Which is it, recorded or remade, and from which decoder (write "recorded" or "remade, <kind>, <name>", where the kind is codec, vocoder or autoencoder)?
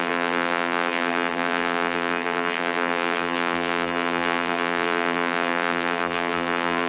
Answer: remade, vocoder, BigVGAN v2